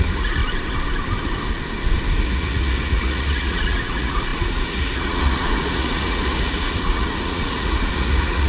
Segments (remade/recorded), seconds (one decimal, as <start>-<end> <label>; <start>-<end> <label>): 0.0-0.4 remade; 0.4-2.2 recorded; 2.2-8.5 remade